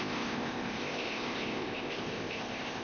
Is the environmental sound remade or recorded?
remade